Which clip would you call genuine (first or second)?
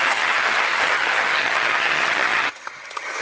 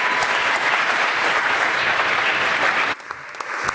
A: second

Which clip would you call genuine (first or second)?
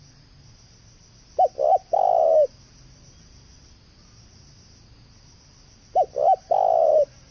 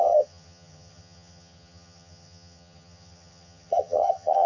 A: first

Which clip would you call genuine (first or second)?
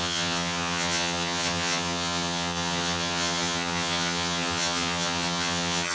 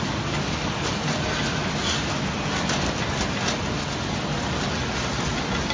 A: second